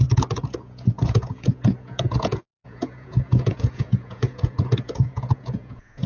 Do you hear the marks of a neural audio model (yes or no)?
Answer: yes